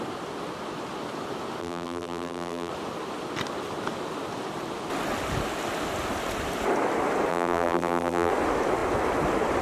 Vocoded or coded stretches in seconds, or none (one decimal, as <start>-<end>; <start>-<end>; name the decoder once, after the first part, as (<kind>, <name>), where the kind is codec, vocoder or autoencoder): 1.6-2.7 (vocoder, BigVGAN v2); 7.3-8.3